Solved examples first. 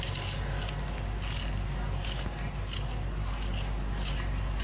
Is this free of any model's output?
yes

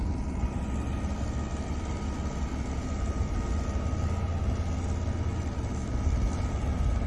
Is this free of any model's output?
yes